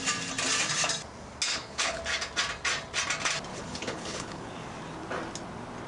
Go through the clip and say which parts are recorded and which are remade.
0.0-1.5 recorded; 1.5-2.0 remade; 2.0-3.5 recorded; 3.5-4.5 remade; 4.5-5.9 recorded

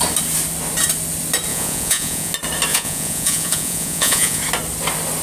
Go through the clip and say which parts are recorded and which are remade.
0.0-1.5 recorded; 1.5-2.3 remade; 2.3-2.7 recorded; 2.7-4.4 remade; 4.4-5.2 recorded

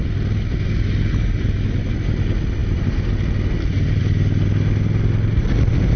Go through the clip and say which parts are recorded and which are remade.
0.0-6.0 recorded

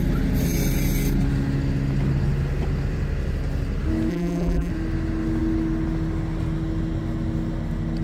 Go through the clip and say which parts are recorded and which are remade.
0.0-4.1 recorded; 4.1-4.7 remade; 4.7-8.0 recorded